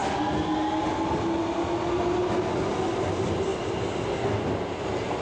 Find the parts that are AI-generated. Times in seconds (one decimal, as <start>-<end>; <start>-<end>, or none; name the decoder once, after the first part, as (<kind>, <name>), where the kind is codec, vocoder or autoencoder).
none